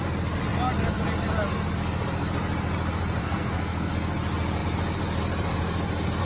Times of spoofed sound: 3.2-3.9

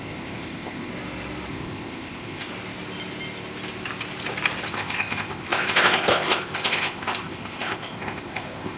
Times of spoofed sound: 0.0-0.9; 1.5-2.5; 4.7-8.8

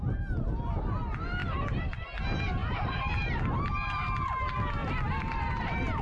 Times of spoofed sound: 1.4-2.2; 2.6-3.2; 4.8-5.6

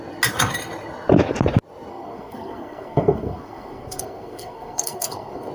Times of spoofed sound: 1.9-5.5

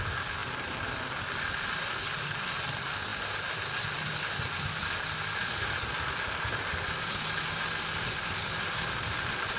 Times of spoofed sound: none